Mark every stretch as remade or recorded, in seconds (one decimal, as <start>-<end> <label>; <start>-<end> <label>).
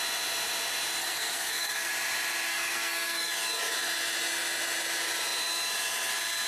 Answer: 0.0-1.0 recorded; 1.0-1.9 remade; 1.9-2.5 recorded; 2.5-3.3 remade; 3.3-6.5 recorded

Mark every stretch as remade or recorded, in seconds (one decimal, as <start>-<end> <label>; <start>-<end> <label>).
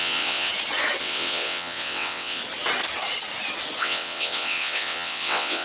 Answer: 0.0-0.5 remade; 0.5-1.0 recorded; 1.0-2.4 remade; 2.4-3.8 recorded; 3.8-5.6 remade